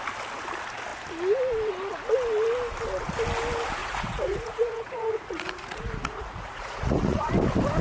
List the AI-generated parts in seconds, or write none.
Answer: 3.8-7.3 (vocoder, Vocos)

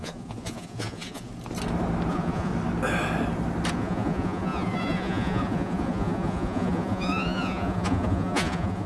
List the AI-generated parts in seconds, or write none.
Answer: 0.0-1.3 (vocoder, Vocos); 2.1-2.5; 3.7-8.9

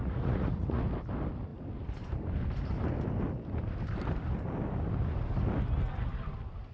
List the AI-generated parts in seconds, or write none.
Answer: 0.0-0.8 (vocoder, Vocos)

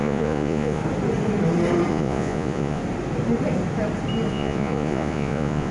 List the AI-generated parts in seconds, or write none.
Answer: 0.0-0.8 (vocoder, Vocos); 1.9-2.8; 4.3-5.7

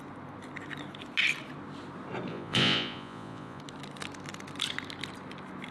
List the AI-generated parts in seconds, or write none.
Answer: 2.3-3.6 (vocoder, Vocos)

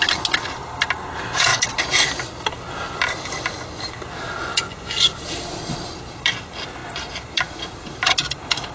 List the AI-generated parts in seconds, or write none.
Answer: 4.4-5.1 (vocoder, Vocos)

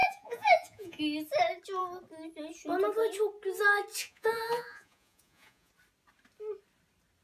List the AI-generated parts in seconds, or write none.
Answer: 0.0-1.0 (vocoder, Vocos); 4.0-5.7

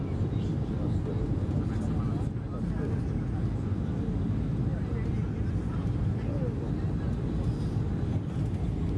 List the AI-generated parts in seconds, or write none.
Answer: none